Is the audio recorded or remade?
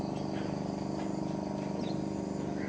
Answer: recorded